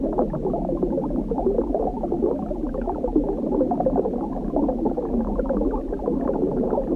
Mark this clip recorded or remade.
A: recorded